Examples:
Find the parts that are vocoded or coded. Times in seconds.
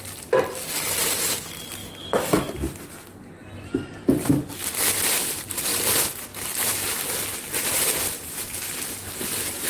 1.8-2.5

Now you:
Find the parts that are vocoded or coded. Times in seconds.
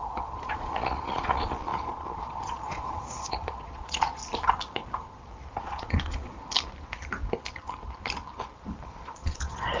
0.0-4.2; 5.6-6.3; 8.9-9.8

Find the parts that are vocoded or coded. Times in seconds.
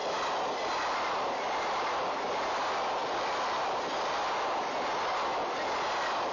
none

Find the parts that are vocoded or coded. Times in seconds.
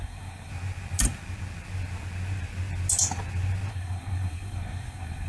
0.0-0.5; 3.7-5.3